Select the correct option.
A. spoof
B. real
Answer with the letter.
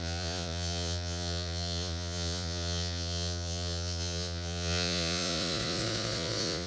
A